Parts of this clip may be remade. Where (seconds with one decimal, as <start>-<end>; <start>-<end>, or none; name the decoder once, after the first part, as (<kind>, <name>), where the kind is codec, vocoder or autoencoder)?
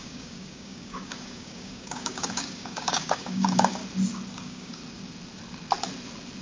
0.0-3.8 (codec, DAC); 4.3-4.8